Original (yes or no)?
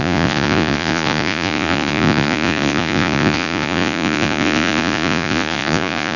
no